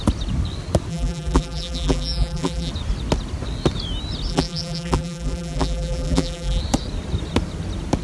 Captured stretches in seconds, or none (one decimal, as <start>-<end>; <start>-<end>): 0.0-0.9; 2.7-4.3; 6.6-8.0